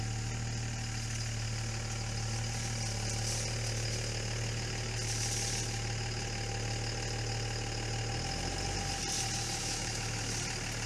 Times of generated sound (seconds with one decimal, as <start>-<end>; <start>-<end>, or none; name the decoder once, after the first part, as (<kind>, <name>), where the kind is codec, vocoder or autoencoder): 9.6-10.2 (autoencoder, DAC-VAE)